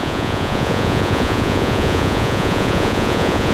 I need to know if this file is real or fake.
fake